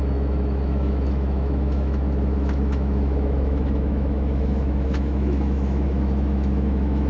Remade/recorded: remade